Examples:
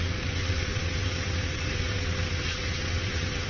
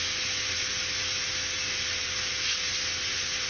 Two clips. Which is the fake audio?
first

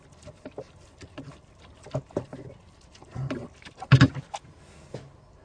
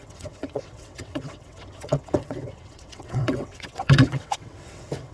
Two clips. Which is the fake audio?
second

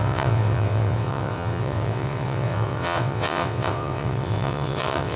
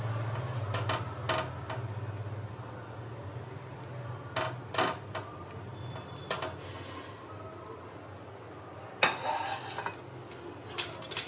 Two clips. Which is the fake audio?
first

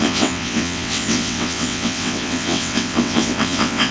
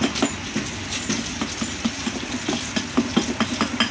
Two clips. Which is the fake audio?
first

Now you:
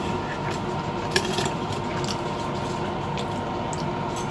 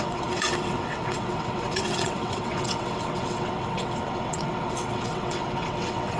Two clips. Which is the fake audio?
second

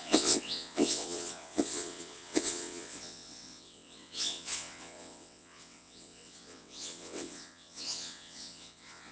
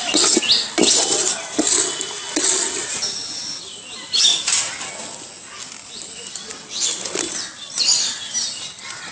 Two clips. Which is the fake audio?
first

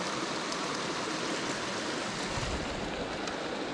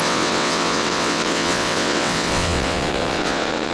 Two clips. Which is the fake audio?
second